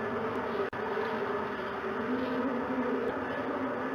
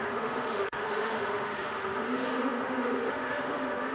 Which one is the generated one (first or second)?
second